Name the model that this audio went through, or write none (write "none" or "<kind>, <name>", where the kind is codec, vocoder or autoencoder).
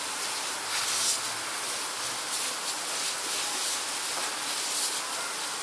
none